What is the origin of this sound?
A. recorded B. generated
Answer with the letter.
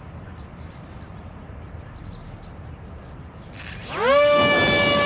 A